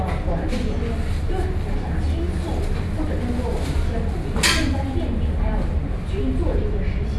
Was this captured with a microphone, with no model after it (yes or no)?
yes